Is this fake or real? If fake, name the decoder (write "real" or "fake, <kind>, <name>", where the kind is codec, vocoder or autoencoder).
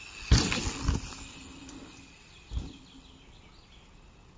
real